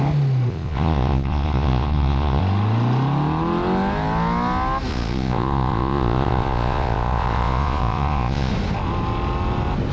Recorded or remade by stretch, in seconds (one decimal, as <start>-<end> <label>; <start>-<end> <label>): 0.0-0.5 recorded; 0.5-2.4 remade; 2.4-4.9 recorded; 4.9-8.5 remade; 8.5-9.9 recorded